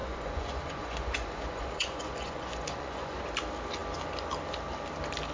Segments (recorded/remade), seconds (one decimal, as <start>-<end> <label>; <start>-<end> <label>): 0.0-3.2 remade; 3.2-5.3 recorded